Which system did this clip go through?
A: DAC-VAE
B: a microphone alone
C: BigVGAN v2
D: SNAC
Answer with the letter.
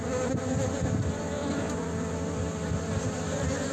B